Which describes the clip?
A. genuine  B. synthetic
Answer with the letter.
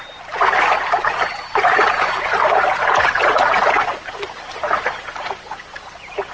A